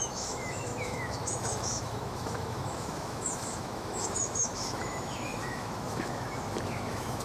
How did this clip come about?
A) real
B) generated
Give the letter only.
B